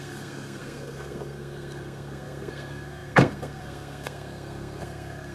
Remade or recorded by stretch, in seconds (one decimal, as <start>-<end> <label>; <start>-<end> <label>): 0.0-5.3 remade